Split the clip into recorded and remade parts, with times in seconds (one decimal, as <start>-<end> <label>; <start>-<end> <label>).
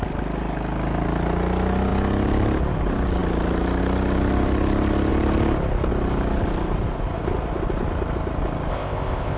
0.0-8.7 recorded; 8.7-9.4 remade